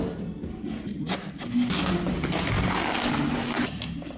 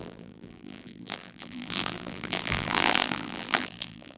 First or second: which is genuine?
first